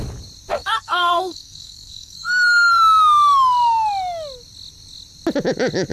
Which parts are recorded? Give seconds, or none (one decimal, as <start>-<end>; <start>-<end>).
0.0-0.5; 2.8-5.9